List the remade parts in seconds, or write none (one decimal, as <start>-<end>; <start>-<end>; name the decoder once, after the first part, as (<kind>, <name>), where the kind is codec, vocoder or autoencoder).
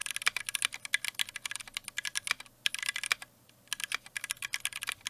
none